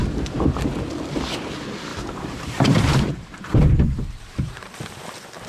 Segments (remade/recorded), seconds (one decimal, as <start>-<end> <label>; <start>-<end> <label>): 0.0-1.9 recorded; 1.9-5.5 remade